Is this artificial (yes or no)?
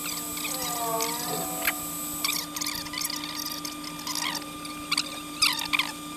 no